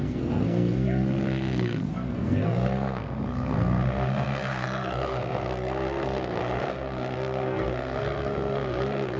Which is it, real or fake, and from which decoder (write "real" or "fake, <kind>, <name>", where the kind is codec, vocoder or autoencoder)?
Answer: fake, codec, SNAC